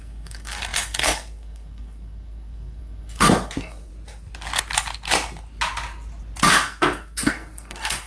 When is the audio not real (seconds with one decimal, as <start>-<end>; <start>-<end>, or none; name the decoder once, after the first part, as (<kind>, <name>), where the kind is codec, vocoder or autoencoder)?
0.0-3.9 (codec, SNAC); 6.5-8.1